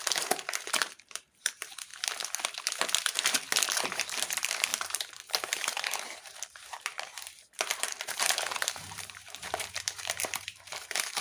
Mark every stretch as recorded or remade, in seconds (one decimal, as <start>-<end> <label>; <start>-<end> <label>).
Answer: 0.0-1.9 remade; 1.9-3.8 recorded; 3.8-11.2 remade